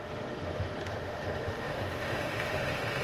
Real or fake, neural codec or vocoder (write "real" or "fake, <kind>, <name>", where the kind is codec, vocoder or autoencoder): fake, autoencoder, DAC-VAE